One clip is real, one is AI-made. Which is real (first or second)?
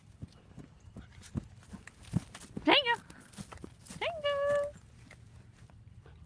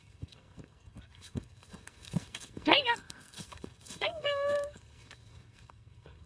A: first